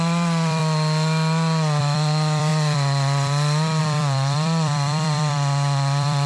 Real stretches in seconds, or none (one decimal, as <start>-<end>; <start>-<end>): 0.6-1.8